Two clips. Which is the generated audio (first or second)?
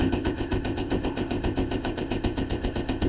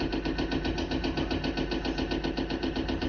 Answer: first